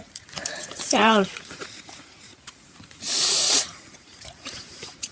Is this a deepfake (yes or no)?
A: yes